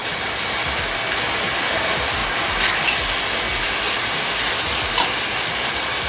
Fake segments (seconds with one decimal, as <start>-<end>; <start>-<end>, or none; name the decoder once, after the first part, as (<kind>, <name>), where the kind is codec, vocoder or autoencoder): none